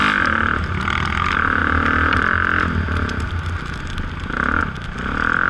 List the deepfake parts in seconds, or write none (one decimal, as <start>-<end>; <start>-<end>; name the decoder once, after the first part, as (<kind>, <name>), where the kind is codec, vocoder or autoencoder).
none